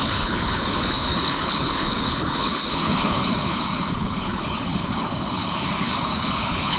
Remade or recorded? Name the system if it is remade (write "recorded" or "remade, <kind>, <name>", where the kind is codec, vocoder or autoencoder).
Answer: remade, codec, HILCodec